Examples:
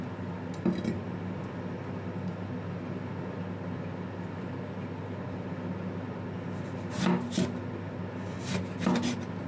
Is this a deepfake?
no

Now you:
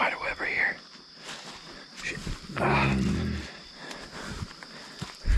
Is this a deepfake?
no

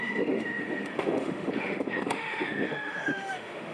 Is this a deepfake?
yes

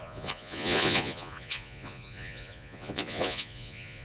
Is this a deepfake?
yes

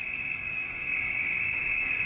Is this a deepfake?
yes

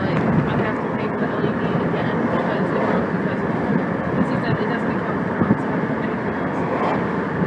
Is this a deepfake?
no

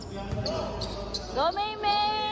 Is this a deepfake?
no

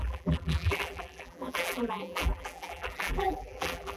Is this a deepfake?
yes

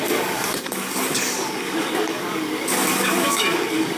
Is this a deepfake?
yes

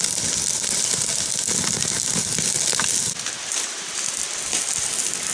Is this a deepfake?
no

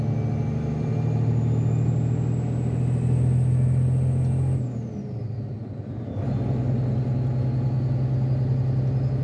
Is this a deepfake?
no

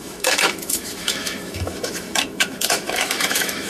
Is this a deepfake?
yes